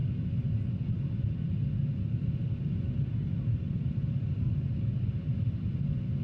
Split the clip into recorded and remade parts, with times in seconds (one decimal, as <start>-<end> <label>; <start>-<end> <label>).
0.0-6.2 recorded

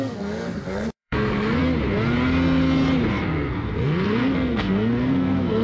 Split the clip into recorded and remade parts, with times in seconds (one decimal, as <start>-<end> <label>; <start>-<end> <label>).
0.0-1.6 remade; 1.6-3.1 recorded; 3.1-5.6 remade

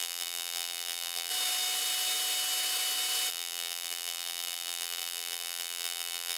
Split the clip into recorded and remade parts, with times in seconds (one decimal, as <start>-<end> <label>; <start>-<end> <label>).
0.0-1.3 remade; 1.3-3.3 recorded; 3.3-6.4 remade

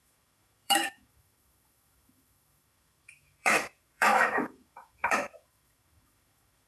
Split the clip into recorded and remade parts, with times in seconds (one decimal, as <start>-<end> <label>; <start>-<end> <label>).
0.0-6.7 remade

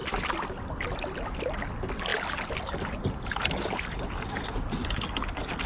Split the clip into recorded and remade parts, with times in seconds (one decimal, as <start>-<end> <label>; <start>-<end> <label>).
0.0-5.7 recorded

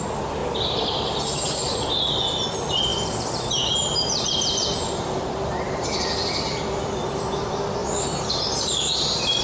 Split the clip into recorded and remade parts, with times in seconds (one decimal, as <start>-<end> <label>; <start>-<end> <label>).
0.0-2.9 recorded; 2.9-7.2 remade; 7.2-7.8 recorded; 7.8-9.4 remade

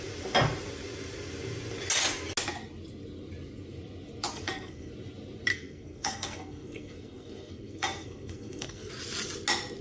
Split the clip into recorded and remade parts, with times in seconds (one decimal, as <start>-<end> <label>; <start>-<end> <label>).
0.0-4.3 recorded; 4.3-4.9 remade; 4.9-5.5 recorded; 5.5-8.9 remade; 8.9-9.8 recorded

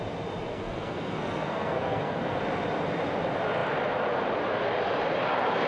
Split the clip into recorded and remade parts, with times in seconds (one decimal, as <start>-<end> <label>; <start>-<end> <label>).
0.0-0.5 recorded; 0.5-2.4 remade; 2.4-5.7 recorded